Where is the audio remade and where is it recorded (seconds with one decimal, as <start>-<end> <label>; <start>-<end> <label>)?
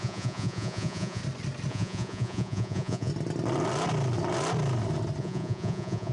0.0-1.2 remade; 1.2-1.7 recorded; 1.7-3.1 remade; 3.1-5.2 recorded; 5.2-6.1 remade